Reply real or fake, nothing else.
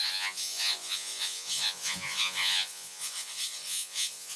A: fake